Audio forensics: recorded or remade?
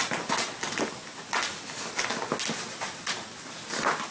recorded